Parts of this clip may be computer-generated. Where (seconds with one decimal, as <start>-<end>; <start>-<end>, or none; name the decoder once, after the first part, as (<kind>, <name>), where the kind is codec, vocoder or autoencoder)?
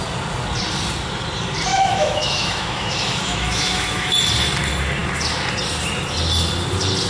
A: 1.7-4.1 (autoencoder, DAC-VAE)